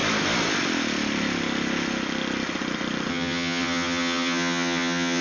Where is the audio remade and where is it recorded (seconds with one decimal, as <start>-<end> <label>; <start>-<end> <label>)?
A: 0.0-3.1 recorded; 3.1-5.2 remade